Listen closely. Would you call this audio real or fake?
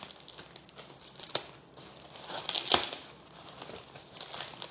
real